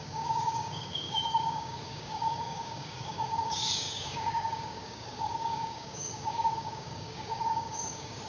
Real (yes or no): no